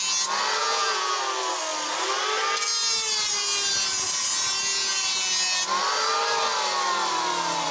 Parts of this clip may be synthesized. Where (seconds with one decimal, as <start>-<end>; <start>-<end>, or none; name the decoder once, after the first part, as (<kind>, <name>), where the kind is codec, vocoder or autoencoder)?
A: 0.6-1.2 (vocoder, Vocos)